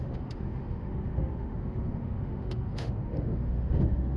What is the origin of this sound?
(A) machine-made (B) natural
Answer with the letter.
A